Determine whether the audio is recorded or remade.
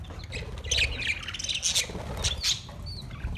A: recorded